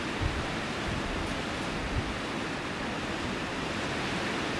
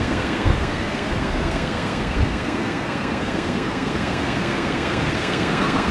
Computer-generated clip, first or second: second